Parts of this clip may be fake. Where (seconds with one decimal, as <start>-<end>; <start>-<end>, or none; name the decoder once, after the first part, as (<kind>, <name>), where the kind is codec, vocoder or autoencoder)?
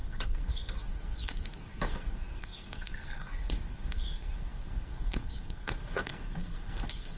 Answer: 0.0-7.2 (codec, SNAC)